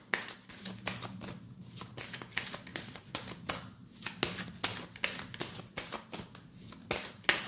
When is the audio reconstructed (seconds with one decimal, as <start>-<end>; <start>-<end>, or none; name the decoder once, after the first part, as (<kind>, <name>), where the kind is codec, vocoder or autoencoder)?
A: 2.7-3.2 (vocoder, Vocos)